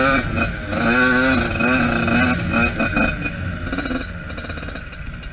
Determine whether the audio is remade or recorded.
recorded